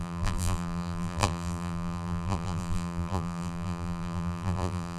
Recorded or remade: remade